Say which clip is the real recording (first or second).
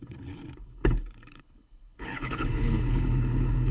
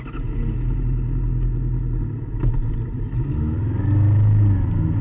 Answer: second